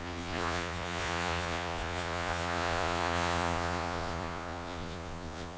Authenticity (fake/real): fake